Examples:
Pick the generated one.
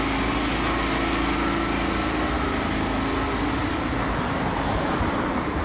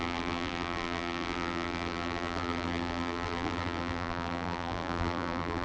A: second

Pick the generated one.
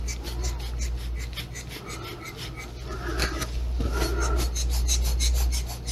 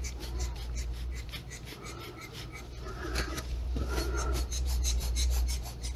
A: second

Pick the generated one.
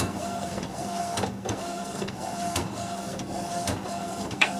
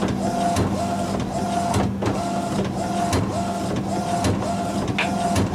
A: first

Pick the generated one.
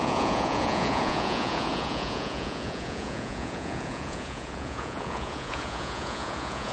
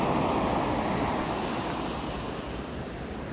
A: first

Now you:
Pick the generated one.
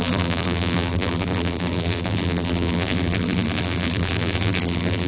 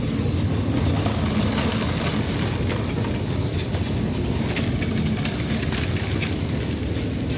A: first